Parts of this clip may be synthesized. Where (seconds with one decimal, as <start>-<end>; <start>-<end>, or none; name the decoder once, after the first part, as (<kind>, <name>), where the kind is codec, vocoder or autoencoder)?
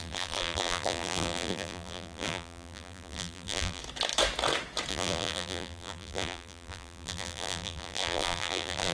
0.0-3.8 (vocoder, BigVGAN v2); 4.9-8.9